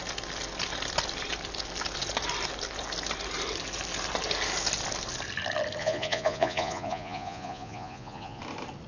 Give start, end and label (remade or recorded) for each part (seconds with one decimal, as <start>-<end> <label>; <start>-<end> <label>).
0.0-5.8 recorded; 5.8-8.4 remade; 8.4-8.9 recorded